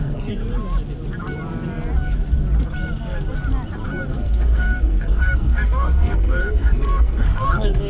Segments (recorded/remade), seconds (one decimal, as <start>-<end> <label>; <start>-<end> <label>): 0.0-0.4 remade; 0.4-4.1 recorded; 4.1-7.9 remade